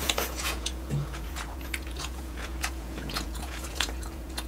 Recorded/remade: remade